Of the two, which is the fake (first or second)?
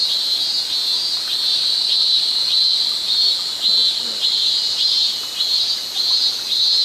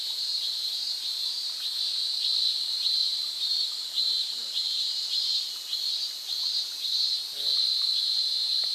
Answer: second